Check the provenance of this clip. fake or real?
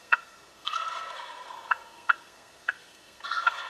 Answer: fake